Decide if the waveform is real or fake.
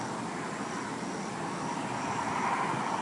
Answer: real